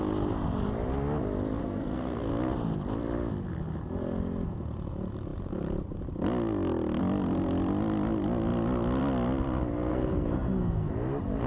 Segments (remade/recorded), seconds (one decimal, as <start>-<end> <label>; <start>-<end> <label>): 0.0-1.6 recorded; 1.6-2.3 remade; 2.3-9.9 recorded; 9.9-10.9 remade; 10.9-11.5 recorded